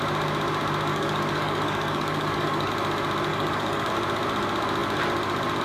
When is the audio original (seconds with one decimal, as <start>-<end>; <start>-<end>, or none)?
0.0-0.9; 2.7-3.3; 3.9-5.6